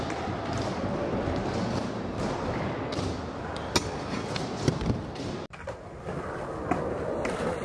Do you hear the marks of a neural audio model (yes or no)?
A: no